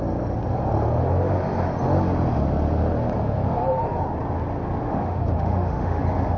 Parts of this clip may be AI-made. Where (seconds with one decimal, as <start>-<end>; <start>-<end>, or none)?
4.8-6.0